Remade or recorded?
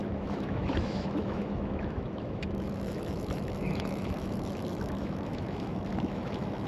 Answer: remade